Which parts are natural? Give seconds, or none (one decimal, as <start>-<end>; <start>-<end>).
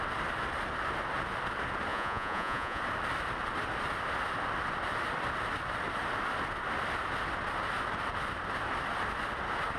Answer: 0.0-1.9; 2.8-9.8